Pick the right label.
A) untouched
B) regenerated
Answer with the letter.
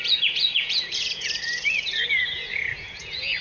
B